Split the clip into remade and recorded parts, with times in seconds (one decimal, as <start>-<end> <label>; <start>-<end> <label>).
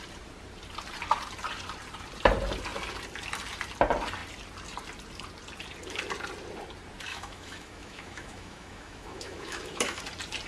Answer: 0.0-7.1 recorded; 7.1-10.0 remade; 10.0-10.5 recorded